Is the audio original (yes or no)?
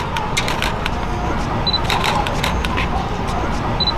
yes